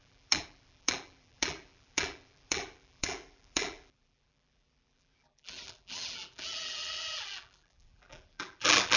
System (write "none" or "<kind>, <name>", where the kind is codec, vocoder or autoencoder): vocoder, BigVGAN v2